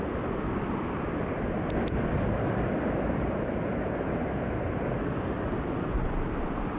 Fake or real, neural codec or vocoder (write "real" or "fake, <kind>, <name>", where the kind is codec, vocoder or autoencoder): real